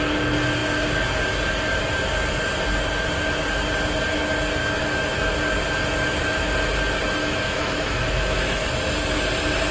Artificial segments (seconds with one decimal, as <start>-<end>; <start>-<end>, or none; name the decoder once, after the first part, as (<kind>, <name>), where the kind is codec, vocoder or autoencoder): 4.6-5.3 (autoencoder, DAC-VAE); 7.2-8.7